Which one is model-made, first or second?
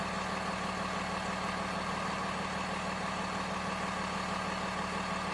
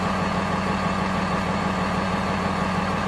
second